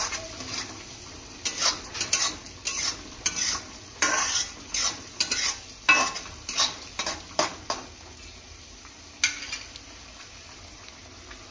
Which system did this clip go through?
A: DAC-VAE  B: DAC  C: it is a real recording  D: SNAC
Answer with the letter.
C